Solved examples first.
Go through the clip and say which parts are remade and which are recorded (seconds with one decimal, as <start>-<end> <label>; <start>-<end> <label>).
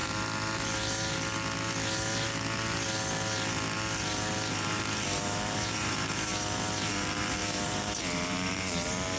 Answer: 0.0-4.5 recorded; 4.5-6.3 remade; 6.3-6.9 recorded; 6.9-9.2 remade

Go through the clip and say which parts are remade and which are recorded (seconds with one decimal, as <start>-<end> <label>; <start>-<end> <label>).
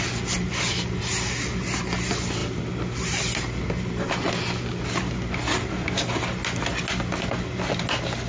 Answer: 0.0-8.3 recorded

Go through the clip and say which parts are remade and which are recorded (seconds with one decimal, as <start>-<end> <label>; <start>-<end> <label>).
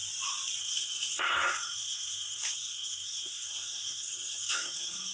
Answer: 0.0-0.6 recorded; 0.6-5.1 remade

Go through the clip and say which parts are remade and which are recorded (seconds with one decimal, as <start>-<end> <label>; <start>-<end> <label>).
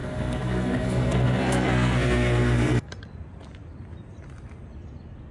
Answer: 0.0-2.9 remade; 2.9-5.3 recorded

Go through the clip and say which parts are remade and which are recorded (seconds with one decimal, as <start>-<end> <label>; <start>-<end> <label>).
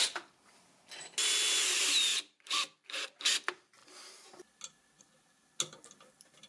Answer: 0.0-6.5 recorded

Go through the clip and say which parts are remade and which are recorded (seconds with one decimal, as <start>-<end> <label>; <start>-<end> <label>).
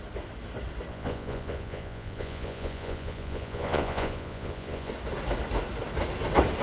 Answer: 0.0-0.9 recorded; 0.9-4.9 remade; 4.9-6.6 recorded